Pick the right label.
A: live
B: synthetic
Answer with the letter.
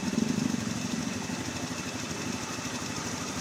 A